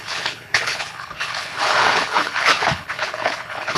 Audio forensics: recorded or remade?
remade